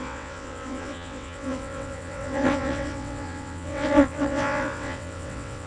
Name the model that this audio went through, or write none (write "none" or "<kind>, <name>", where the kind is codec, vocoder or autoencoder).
vocoder, WaveNeXt